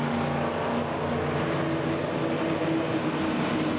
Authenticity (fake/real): real